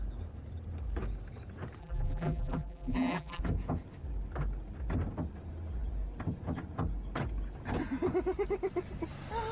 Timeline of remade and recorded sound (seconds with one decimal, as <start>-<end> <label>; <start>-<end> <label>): 0.0-1.8 recorded; 1.8-3.4 remade; 3.4-9.5 recorded